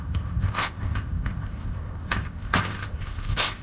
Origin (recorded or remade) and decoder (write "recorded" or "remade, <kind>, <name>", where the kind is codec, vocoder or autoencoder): remade, codec, ZipCodec